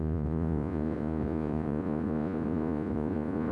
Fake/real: fake